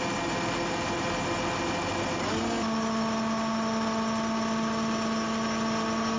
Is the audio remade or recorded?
recorded